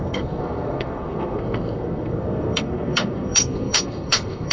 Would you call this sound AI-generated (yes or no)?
yes